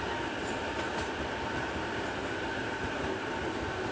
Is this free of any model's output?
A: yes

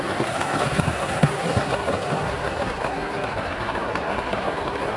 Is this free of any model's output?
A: no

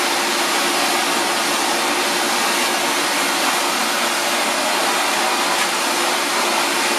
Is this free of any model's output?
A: yes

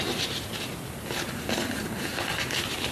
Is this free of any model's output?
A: yes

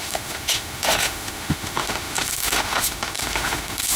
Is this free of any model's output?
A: no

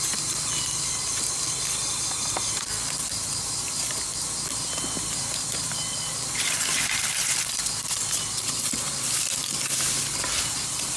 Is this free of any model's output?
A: yes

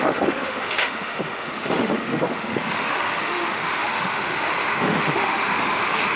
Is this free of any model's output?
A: no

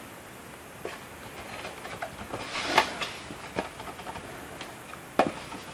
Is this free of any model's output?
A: no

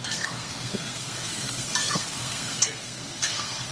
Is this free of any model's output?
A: no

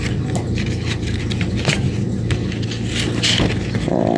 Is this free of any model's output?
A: yes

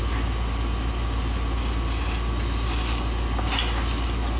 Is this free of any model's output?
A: yes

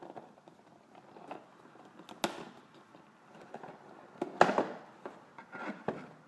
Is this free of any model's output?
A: yes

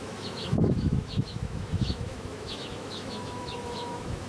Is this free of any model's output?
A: no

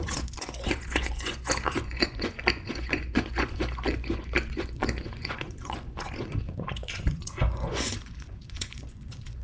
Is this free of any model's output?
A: no